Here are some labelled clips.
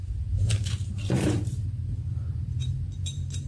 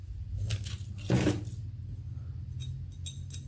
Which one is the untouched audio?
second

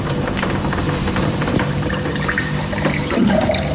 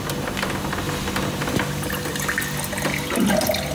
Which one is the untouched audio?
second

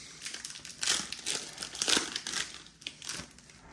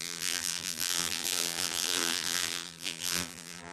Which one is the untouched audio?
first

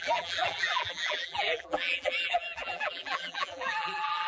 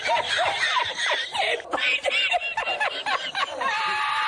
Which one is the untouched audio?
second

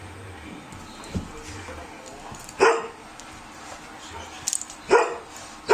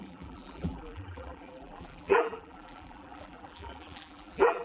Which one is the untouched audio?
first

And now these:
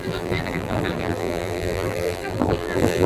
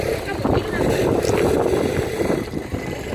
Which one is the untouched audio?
second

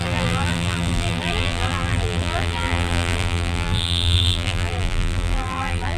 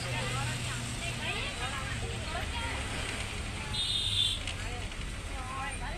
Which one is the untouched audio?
second